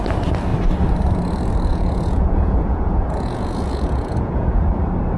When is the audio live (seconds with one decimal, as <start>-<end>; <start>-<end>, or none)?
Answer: 0.0-1.7; 4.8-5.2